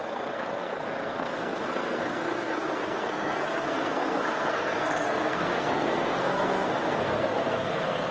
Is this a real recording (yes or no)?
no